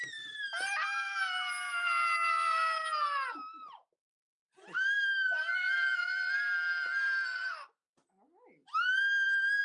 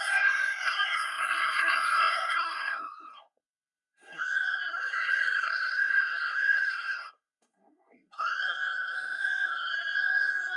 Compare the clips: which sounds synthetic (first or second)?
second